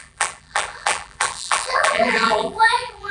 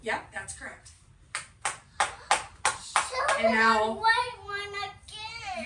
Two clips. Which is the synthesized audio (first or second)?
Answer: first